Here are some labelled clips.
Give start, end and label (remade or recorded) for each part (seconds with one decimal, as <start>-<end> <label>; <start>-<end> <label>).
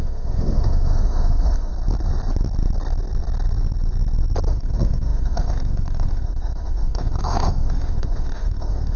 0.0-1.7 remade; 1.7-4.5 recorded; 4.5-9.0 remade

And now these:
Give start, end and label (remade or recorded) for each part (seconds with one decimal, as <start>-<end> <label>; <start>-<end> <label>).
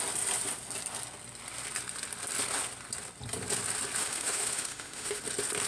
0.0-4.0 recorded; 4.0-5.2 remade; 5.2-5.7 recorded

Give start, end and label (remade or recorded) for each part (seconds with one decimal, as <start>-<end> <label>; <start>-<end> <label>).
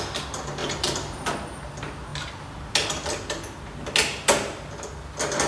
0.0-5.5 recorded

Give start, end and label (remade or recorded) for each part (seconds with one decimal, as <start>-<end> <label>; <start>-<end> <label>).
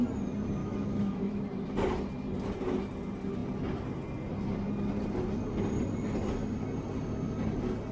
0.0-0.6 recorded; 0.6-1.4 remade; 1.4-7.9 recorded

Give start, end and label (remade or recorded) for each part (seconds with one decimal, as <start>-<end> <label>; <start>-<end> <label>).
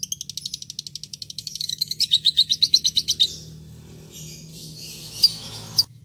0.0-1.1 recorded; 1.1-3.1 remade; 3.1-4.5 recorded; 4.5-6.0 remade